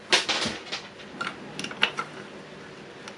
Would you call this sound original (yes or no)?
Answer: yes